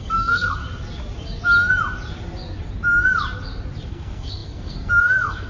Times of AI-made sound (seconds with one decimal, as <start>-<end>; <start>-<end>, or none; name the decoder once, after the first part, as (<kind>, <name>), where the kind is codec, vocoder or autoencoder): 0.0-0.6 (codec, SNAC); 3.9-5.5